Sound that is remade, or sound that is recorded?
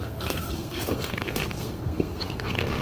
remade